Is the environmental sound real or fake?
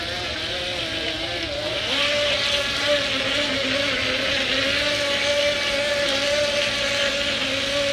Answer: real